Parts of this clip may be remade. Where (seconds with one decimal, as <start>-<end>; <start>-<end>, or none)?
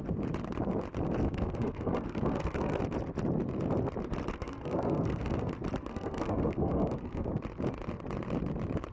1.2-2.8; 4.3-5.5; 5.9-7.4